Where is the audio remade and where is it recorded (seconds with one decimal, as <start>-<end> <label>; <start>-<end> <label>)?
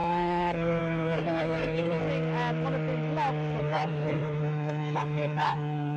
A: 0.0-2.0 remade; 2.0-3.6 recorded; 3.6-6.0 remade